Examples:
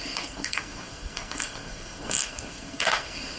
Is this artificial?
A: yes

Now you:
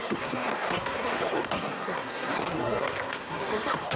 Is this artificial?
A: yes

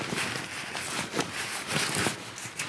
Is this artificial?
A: no